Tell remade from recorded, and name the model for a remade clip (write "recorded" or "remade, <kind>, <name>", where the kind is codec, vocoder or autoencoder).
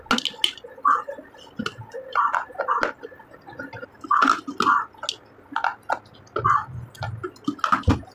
recorded